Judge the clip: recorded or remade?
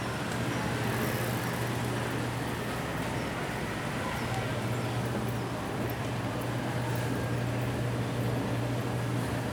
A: recorded